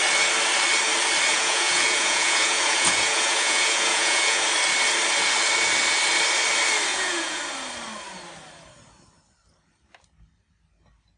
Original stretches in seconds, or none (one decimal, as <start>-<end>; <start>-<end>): 0.0-1.3; 4.4-6.9; 7.4-11.2